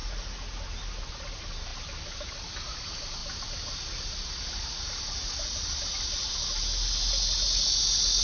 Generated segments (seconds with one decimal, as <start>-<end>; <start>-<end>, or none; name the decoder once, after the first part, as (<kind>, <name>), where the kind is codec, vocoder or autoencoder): none